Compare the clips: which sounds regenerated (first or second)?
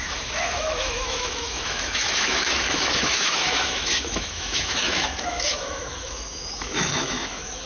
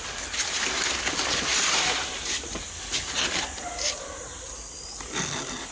first